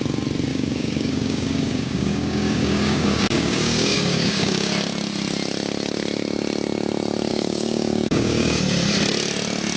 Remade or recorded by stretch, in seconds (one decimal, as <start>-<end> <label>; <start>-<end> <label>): 0.0-0.5 recorded; 0.5-4.7 remade; 4.7-7.3 recorded; 7.3-8.6 remade; 8.6-9.8 recorded